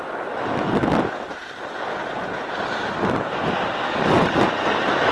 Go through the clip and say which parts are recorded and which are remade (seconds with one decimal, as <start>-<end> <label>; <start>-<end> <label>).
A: 0.0-2.0 recorded; 2.0-2.6 remade; 2.6-5.1 recorded